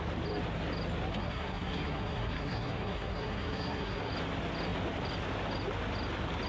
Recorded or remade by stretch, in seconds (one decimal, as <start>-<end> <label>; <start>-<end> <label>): 0.0-1.1 recorded; 1.1-4.1 remade; 4.1-6.5 recorded